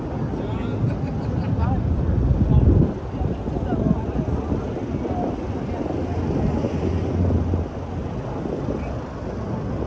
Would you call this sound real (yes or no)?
yes